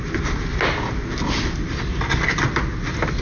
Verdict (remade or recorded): recorded